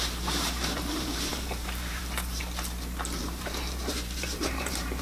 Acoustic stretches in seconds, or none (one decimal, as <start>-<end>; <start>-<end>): 2.4-3.2